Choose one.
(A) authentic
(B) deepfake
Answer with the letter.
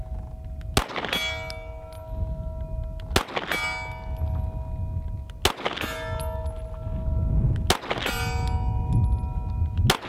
A